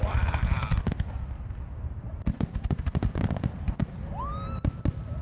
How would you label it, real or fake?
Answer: real